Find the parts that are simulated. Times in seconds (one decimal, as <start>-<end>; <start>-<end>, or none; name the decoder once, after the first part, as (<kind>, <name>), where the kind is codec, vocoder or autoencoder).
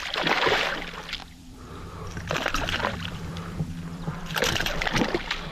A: 1.2-4.5 (vocoder, BigVGAN v2)